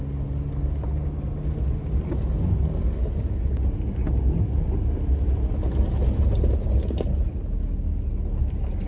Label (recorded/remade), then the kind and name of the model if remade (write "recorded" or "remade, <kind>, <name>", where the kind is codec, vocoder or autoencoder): recorded